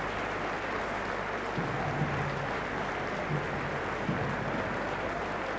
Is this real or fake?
real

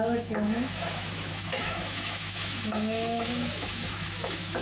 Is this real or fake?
fake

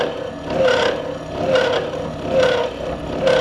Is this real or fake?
real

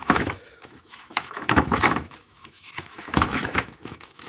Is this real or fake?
fake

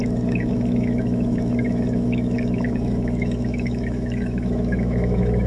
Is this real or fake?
fake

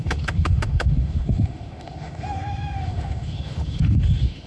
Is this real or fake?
fake